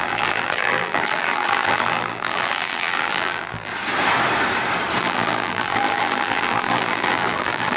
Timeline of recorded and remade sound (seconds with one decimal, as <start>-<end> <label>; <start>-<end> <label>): 0.0-3.7 remade; 3.7-5.0 recorded; 5.0-7.8 remade